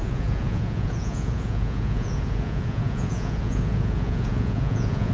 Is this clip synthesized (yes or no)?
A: yes